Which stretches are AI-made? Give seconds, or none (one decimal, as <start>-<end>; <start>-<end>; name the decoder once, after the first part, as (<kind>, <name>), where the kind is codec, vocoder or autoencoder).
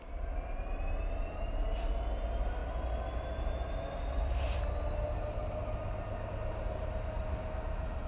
none